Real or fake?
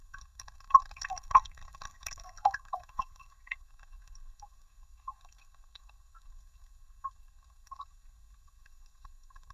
fake